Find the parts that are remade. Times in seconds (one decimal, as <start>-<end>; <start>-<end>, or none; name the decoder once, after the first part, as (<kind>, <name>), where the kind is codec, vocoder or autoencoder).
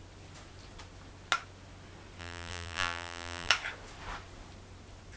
2.2-3.5 (vocoder, BigVGAN v2)